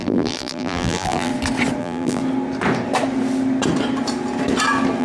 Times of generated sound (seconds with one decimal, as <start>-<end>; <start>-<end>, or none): 0.0-1.3; 1.8-2.2